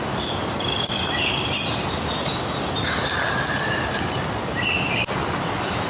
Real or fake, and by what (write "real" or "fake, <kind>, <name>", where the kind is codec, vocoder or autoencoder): real